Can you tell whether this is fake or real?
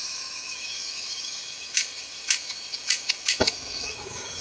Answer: fake